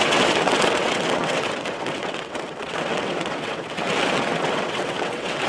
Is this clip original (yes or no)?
no